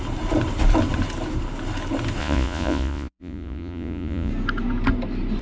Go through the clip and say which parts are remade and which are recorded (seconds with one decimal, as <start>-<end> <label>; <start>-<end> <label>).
0.0-2.2 recorded; 2.2-4.3 remade; 4.3-5.4 recorded